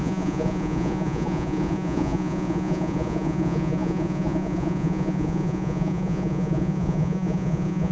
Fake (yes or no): yes